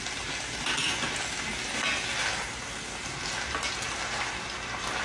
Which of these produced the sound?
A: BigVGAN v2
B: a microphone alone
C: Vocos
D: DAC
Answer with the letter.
B